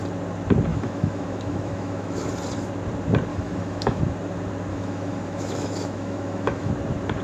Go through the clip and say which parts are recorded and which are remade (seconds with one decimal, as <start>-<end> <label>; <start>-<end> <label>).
0.0-0.7 recorded; 0.7-2.3 remade; 2.3-3.3 recorded; 3.3-4.0 remade; 4.0-4.7 recorded; 4.7-6.7 remade; 6.7-7.2 recorded